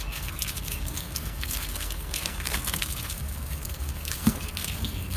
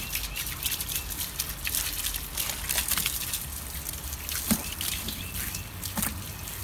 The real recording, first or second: second